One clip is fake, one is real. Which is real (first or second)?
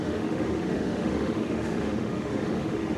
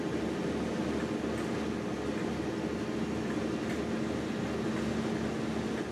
second